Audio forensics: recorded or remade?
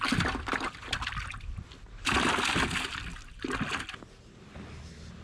recorded